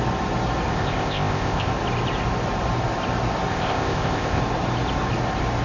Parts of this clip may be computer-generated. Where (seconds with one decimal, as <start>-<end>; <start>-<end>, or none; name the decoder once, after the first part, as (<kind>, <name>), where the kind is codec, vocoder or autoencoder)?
0.7-1.7 (codec, ZipCodec); 3.5-4.4